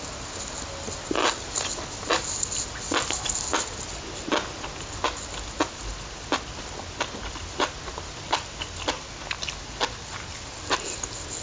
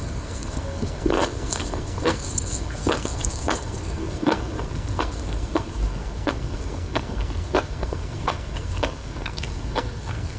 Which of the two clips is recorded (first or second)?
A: first